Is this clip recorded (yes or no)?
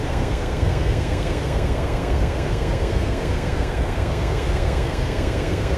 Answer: no